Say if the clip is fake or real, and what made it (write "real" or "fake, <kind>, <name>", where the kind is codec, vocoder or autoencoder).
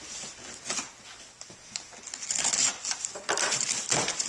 real